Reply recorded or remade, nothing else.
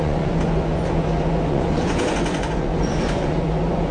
remade